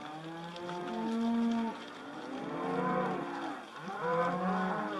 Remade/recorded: recorded